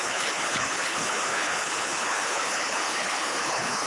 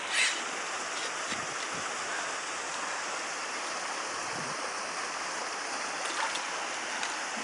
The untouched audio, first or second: second